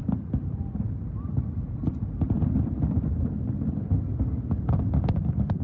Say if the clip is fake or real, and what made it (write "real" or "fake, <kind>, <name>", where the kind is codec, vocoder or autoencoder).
real